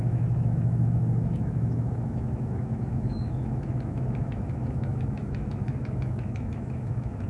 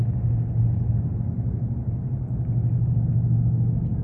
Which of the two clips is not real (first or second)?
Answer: first